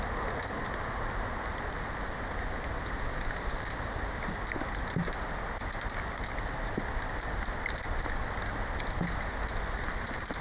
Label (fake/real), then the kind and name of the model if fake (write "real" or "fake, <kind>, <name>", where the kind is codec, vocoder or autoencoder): real